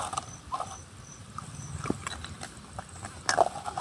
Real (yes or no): yes